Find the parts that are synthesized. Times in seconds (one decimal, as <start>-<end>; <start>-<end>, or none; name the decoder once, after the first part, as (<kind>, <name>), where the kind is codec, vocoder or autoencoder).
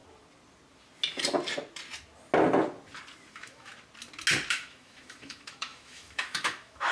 3.3-3.7 (autoencoder, DAC-VAE); 4.5-6.9